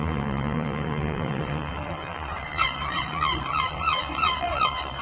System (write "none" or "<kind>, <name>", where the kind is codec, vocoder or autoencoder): vocoder, WaveNeXt